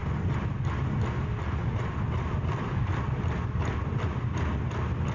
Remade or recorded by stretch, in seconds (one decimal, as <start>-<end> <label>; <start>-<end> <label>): 0.0-0.7 remade; 0.7-1.6 recorded; 1.6-4.5 remade; 4.5-5.1 recorded